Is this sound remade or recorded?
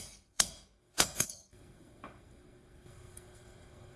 remade